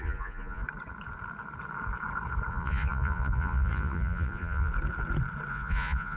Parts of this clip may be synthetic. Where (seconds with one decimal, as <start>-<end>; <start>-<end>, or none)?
0.0-0.6; 2.5-4.7; 5.5-6.2